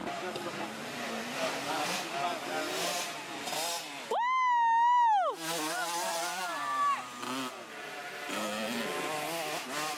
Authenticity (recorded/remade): recorded